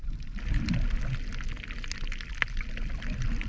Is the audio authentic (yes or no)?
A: yes